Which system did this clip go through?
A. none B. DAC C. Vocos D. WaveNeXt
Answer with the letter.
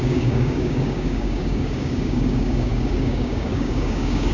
B